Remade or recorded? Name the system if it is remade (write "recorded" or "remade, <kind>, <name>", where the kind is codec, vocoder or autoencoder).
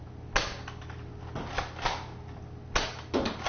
recorded